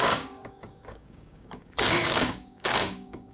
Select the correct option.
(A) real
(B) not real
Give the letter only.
B